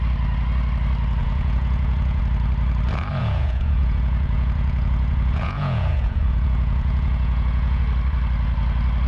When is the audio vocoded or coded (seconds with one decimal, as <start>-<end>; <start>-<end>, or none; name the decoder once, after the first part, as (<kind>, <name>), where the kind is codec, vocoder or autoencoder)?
1.2-2.2 (vocoder, Vocos); 3.2-7.8